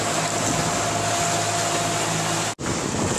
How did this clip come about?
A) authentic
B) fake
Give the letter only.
A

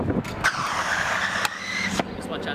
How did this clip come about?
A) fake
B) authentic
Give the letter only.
B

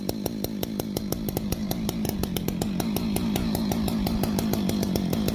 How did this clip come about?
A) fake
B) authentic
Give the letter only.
B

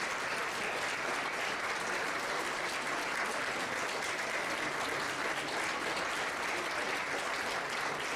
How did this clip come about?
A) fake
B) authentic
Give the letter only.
B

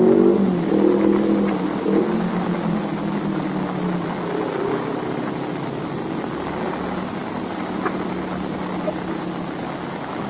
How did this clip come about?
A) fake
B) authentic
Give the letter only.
B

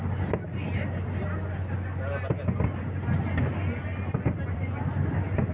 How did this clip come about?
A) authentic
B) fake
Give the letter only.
A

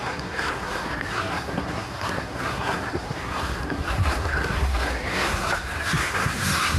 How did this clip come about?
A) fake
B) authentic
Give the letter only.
A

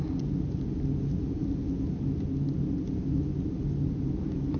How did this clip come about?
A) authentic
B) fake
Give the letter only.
A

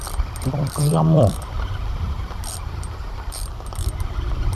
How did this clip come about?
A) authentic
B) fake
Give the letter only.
B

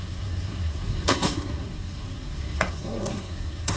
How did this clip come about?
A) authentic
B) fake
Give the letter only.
B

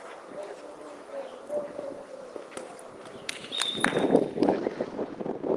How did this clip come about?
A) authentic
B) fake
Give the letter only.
A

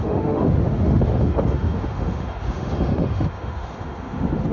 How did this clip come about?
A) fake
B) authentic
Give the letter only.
A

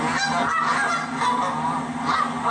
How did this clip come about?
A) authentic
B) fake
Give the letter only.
A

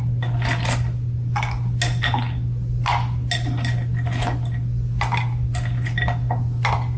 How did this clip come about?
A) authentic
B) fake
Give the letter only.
A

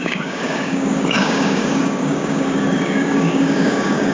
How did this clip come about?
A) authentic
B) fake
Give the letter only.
B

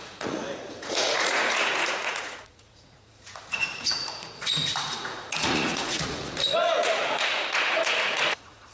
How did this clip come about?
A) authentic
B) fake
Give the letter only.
B